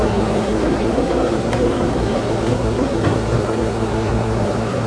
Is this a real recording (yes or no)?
no